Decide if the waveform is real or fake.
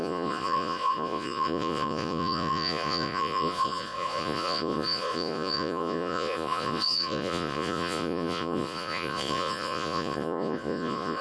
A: fake